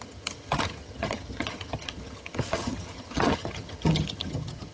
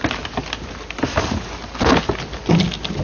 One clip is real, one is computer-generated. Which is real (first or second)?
second